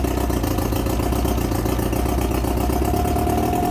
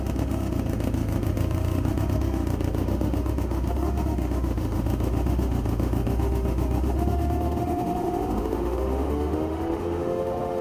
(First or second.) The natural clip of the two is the first